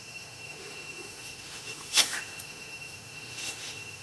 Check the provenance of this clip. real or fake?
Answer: fake